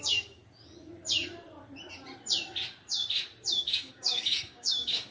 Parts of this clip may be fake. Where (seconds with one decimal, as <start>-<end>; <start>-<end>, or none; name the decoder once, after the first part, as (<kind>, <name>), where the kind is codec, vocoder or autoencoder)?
0.0-0.4 (codec, DAC); 3.5-5.1